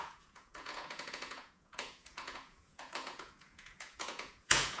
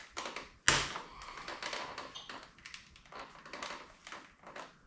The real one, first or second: second